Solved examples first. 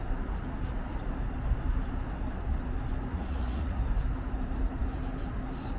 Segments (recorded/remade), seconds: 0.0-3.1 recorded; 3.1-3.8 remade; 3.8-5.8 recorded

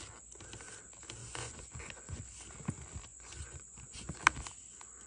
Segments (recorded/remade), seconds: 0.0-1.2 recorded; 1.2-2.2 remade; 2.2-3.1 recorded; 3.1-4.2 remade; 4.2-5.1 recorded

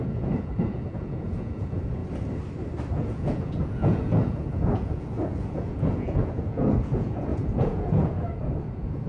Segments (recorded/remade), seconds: 0.0-2.0 remade; 2.0-2.9 recorded; 2.9-9.1 remade

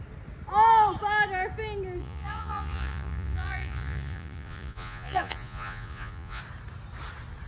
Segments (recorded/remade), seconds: 0.0-2.0 recorded; 2.0-6.4 remade; 6.4-7.5 recorded

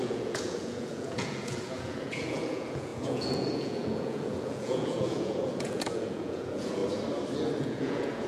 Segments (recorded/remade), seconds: 0.0-6.8 remade; 6.8-7.6 recorded; 7.6-8.3 remade